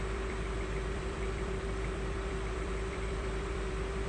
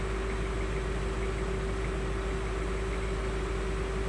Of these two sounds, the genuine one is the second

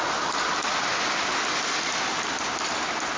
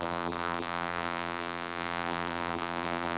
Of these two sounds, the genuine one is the first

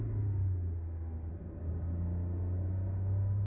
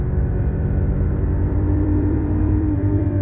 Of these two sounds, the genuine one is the first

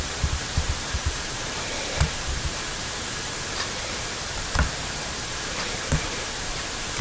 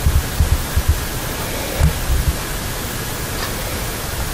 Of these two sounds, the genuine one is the second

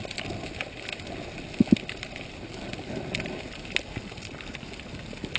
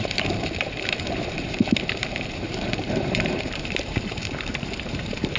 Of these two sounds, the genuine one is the first